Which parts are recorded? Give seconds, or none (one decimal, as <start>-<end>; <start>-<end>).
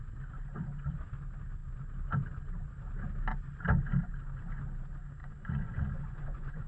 0.0-5.2